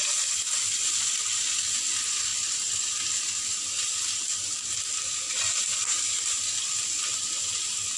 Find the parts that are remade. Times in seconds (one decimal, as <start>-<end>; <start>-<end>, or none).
none